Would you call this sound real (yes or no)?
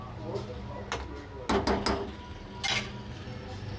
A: yes